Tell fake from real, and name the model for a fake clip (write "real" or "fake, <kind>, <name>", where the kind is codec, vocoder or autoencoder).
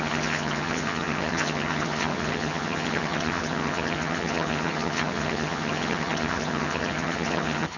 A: fake, vocoder, HiFi-GAN